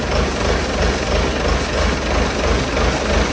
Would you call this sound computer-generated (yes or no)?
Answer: no